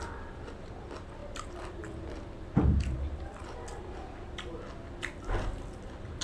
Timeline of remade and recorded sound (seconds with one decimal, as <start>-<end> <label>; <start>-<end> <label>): 0.0-6.2 recorded